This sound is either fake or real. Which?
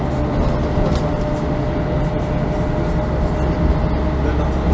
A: real